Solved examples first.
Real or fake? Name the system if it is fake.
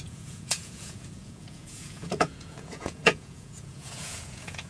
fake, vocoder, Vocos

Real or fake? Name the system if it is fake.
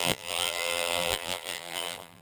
fake, vocoder, BigVGAN v2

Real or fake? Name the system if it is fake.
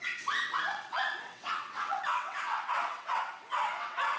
fake, vocoder, WaveNeXt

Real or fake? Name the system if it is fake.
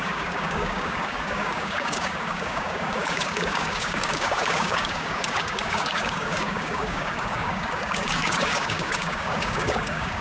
fake, codec, DAC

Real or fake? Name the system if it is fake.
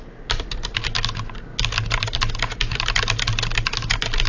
real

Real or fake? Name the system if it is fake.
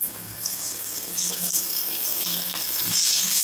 fake, codec, SNAC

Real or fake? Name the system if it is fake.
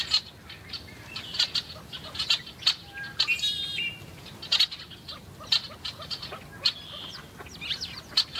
real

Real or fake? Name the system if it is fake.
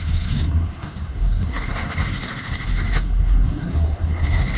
fake, codec, SNAC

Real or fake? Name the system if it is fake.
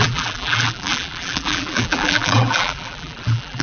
fake, vocoder, BigVGAN v2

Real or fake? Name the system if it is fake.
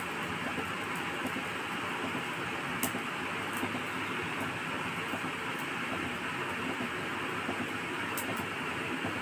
real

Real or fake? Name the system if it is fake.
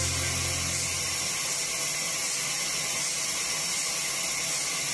real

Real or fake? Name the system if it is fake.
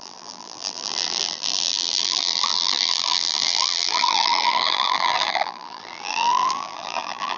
fake, vocoder, BigVGAN v2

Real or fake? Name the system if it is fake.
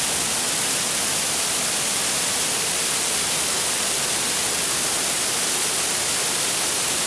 real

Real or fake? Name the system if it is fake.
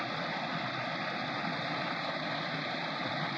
real